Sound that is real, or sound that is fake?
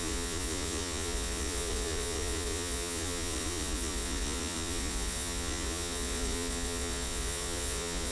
fake